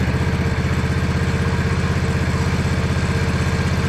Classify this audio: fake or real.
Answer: real